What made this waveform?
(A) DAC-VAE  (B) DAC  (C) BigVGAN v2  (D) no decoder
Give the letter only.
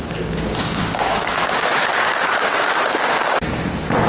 B